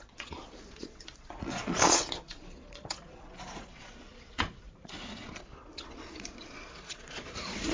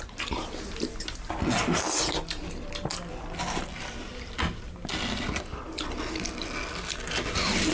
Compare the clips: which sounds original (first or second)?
second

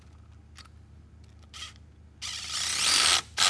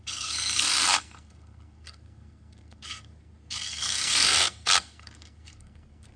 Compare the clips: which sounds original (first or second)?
first